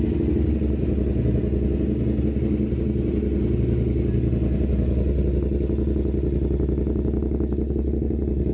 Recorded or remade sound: recorded